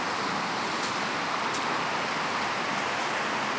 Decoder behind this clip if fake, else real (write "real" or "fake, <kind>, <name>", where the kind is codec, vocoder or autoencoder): real